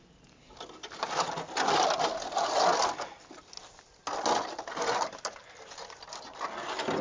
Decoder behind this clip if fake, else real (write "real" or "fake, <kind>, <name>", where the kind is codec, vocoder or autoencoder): real